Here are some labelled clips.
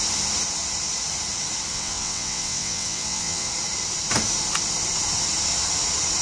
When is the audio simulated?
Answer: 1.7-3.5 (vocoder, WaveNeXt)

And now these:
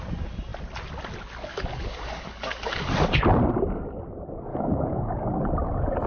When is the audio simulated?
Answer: 1.5-2.9 (codec, DAC); 4.5-5.3